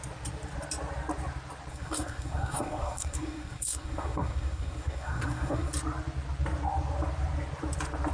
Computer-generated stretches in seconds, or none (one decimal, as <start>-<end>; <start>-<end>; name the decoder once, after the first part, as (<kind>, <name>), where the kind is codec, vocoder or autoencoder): 1.7-5.7 (codec, SNAC)